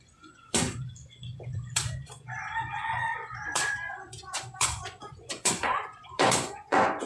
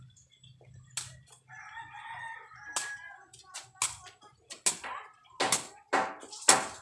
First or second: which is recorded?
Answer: second